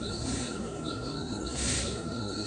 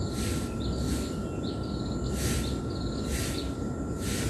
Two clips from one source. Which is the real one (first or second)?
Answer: second